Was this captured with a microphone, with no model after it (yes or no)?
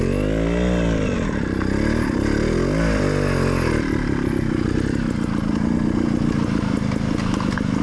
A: yes